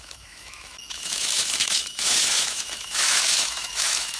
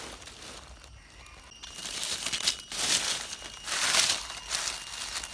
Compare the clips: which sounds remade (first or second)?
first